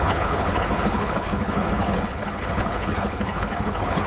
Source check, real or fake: fake